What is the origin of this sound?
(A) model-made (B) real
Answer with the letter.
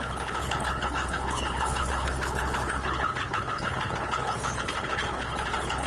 A